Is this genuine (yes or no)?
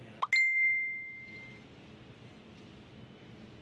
yes